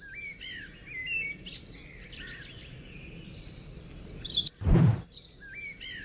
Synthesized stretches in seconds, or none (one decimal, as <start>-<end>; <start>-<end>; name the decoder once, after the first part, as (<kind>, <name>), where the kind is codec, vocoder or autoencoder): 1.0-4.6 (vocoder, BigVGAN v2)